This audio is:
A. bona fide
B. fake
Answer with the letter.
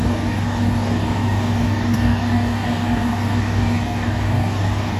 B